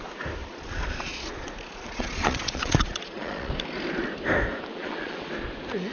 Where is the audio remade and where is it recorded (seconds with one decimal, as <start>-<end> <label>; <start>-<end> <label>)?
0.0-0.4 recorded; 0.4-3.5 remade; 3.5-4.7 recorded; 4.7-5.3 remade; 5.3-5.9 recorded